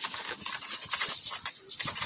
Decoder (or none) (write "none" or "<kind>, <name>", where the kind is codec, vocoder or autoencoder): none